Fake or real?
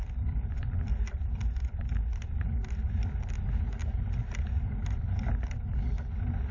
real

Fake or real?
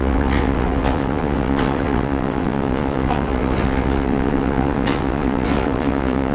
fake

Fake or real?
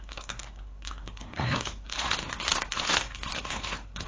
fake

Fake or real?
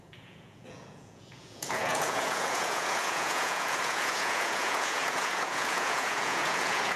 fake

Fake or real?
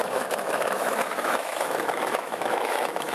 fake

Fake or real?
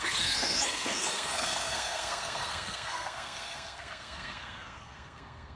fake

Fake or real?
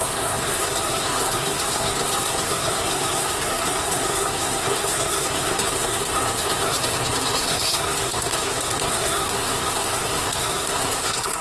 fake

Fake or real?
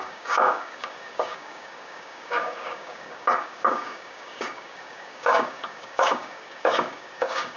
fake